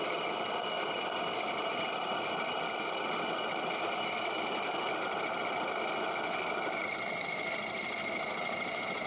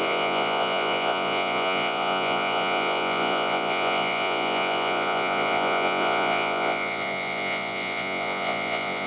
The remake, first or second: second